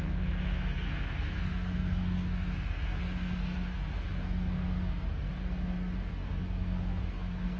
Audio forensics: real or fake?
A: fake